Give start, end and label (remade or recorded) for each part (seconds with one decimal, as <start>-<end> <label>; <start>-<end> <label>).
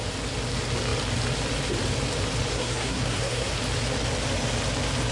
0.0-2.5 recorded; 2.5-3.5 remade; 3.5-5.1 recorded